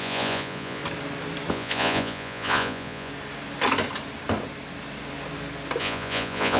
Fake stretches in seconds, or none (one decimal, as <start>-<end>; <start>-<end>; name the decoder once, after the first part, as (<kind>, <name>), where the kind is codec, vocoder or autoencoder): 0.0-0.8 (vocoder, Vocos); 1.5-3.1; 5.8-6.6